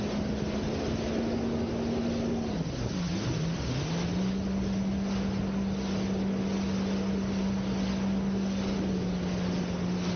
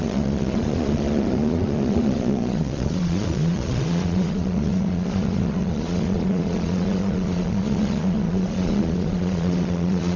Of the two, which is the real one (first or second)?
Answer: first